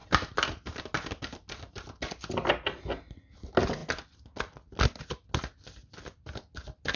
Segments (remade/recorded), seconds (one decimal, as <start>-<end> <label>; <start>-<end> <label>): 0.0-7.0 recorded

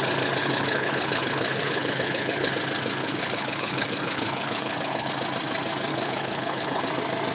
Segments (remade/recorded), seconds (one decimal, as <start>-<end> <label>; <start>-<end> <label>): 0.0-0.4 recorded; 0.4-2.5 remade; 2.5-3.0 recorded; 3.0-5.1 remade; 5.1-5.9 recorded; 5.9-6.8 remade; 6.8-7.3 recorded

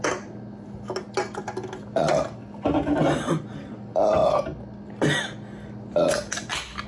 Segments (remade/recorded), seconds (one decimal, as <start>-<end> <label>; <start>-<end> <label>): 0.0-6.9 recorded

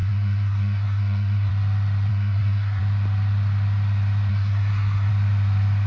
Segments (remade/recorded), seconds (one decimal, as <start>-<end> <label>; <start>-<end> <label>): 0.0-1.5 remade; 1.5-2.1 recorded; 2.1-2.8 remade; 2.8-4.3 recorded; 4.3-5.1 remade; 5.1-5.9 recorded

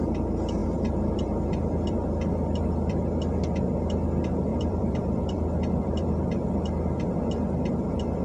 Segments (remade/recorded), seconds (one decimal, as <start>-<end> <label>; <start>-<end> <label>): 0.0-0.6 recorded; 0.6-3.0 remade; 3.0-4.5 recorded; 4.5-7.2 remade; 7.2-8.2 recorded

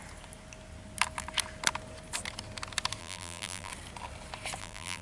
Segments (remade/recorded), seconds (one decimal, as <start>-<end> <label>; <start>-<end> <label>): 0.0-3.0 recorded; 3.0-3.7 remade; 3.7-4.6 recorded; 4.6-5.0 remade

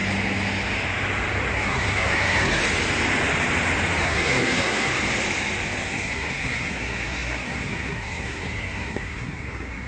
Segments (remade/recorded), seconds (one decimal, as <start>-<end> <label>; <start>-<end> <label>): 0.0-1.5 recorded; 1.5-2.6 remade; 2.6-4.0 recorded; 4.0-4.9 remade; 4.9-5.9 recorded; 5.9-9.9 remade